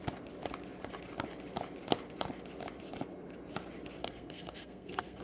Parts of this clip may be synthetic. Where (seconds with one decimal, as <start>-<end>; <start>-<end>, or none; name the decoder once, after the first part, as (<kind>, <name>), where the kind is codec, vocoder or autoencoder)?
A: 4.0-5.2 (codec, SNAC)